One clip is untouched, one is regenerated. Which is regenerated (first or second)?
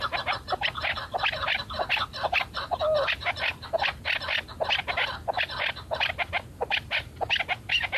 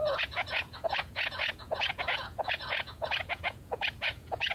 second